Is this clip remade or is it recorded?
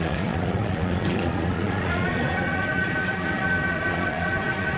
remade